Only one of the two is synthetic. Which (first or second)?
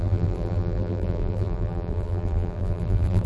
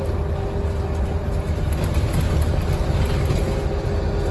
first